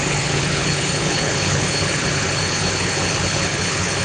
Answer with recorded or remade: remade